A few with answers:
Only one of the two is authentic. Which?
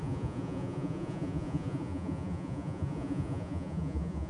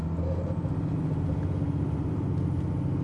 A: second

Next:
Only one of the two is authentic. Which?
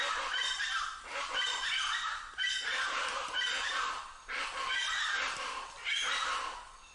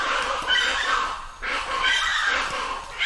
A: first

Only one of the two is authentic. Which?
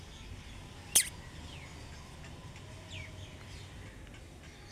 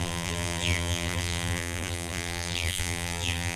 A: first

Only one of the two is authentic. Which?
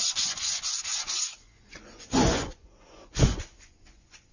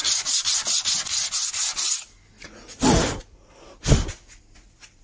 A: second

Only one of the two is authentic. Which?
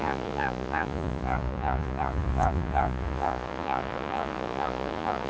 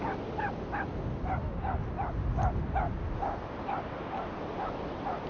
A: second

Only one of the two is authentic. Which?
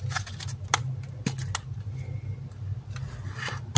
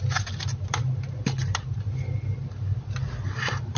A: first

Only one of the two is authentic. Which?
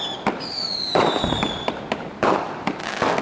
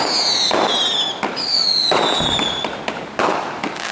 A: second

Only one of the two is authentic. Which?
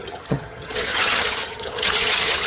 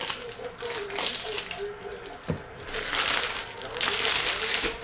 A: second